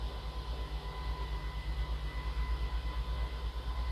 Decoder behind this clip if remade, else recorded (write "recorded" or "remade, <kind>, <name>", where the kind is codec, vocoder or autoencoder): recorded